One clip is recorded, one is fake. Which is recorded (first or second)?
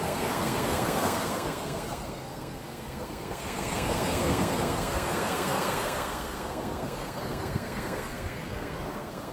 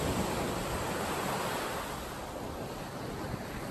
second